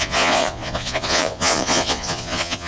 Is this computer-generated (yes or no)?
yes